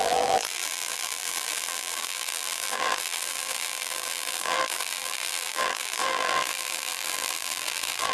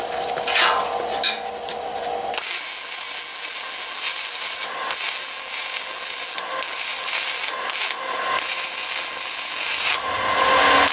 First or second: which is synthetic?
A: first